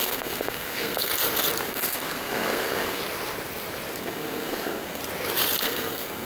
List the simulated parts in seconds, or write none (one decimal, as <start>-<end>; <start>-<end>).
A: 0.0-1.1; 1.6-3.0; 4.0-5.0; 5.6-6.2